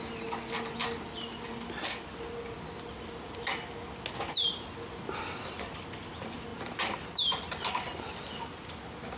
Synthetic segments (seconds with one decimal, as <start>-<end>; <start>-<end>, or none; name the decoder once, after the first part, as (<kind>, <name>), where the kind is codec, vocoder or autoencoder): none